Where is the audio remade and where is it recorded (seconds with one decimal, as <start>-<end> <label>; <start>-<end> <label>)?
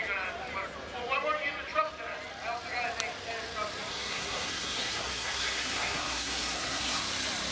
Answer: 0.0-3.9 recorded; 3.9-7.0 remade; 7.0-7.5 recorded